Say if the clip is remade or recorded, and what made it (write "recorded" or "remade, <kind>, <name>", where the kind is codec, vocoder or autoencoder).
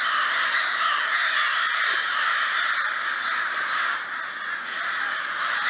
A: recorded